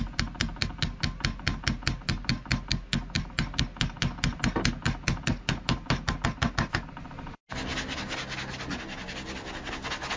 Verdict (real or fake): real